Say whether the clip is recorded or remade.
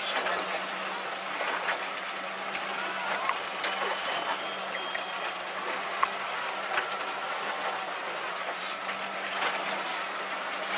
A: recorded